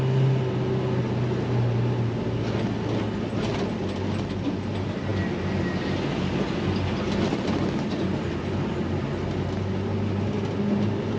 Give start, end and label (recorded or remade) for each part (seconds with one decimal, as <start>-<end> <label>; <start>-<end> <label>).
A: 0.0-11.2 recorded